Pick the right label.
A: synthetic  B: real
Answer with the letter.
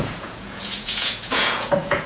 A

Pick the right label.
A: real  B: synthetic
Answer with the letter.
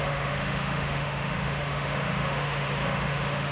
B